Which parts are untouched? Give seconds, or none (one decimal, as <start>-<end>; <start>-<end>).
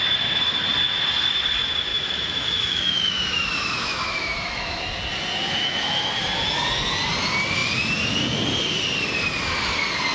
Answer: 0.0-1.9; 4.9-5.6; 6.1-10.1